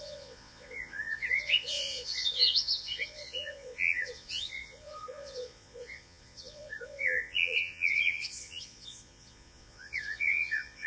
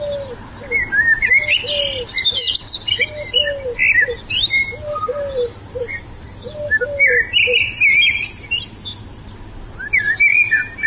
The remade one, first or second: first